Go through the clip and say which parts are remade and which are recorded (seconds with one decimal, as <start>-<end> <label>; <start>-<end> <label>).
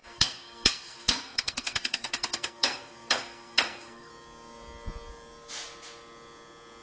0.0-4.1 remade; 4.1-6.8 recorded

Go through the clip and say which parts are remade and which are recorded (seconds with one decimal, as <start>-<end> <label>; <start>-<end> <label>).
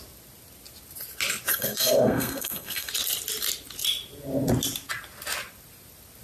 0.0-1.5 recorded; 1.5-2.9 remade; 2.9-6.2 recorded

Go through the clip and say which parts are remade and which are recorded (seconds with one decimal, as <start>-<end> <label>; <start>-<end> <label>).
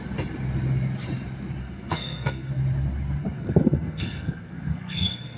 0.0-1.6 recorded; 1.6-2.5 remade; 2.5-3.2 recorded; 3.2-5.4 remade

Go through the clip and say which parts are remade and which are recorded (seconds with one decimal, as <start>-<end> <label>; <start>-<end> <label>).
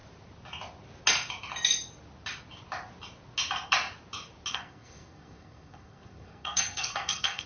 0.0-4.5 recorded; 4.5-7.5 remade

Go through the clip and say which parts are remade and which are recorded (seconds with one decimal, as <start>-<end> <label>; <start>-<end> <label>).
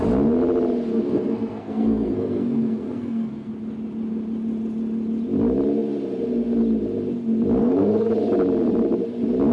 0.0-0.9 recorded; 0.9-3.5 remade; 3.5-7.6 recorded; 7.6-8.1 remade; 8.1-9.5 recorded